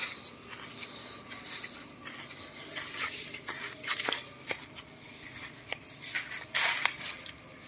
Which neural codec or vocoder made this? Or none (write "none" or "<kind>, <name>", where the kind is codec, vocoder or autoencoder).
none